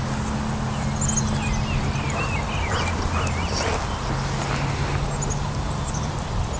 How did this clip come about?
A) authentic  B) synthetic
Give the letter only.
A